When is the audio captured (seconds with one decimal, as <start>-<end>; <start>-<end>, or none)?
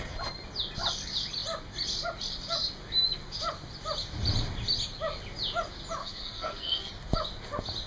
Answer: 0.0-6.0; 6.9-7.9